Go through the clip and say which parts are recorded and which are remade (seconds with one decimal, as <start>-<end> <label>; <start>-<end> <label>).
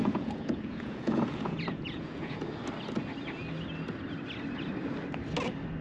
0.0-2.5 remade; 2.5-5.8 recorded